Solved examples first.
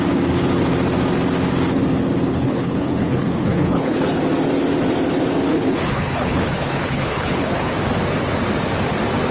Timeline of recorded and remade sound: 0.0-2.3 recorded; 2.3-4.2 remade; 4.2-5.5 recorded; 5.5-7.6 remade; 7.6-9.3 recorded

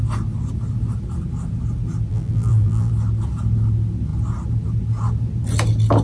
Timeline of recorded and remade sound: 0.0-2.1 recorded; 2.1-2.9 remade; 2.9-6.0 recorded

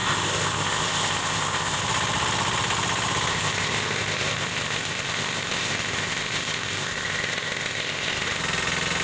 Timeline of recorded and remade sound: 0.0-1.8 remade; 1.8-3.3 recorded; 3.3-8.4 remade; 8.4-9.0 recorded